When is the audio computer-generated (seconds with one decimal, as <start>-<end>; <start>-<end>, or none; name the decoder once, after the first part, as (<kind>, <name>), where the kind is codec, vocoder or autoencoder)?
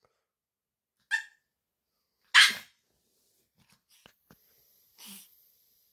none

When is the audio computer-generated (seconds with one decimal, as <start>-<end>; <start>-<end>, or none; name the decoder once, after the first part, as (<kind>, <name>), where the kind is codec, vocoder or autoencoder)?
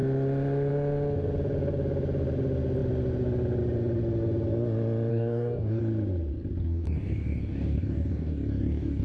5.1-5.8 (codec, DAC); 6.6-9.0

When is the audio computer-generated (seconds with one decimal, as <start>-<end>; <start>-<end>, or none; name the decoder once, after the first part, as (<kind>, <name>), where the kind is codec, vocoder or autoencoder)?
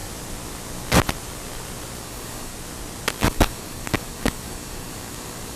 2.0-2.5 (codec, DAC); 3.2-5.6